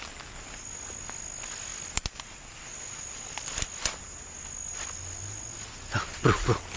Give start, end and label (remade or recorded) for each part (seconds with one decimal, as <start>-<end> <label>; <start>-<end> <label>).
0.0-6.8 recorded